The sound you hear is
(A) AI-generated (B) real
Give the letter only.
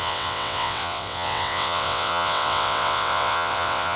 A